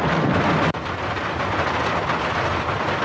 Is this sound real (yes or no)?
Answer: yes